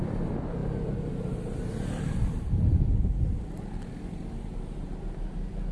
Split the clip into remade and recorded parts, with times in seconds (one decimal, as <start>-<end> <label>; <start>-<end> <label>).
0.0-5.7 recorded